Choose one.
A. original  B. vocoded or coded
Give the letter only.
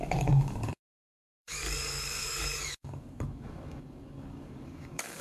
B